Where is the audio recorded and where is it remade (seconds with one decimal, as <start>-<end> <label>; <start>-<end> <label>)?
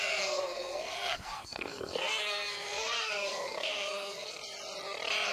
0.0-4.4 remade; 4.4-5.3 recorded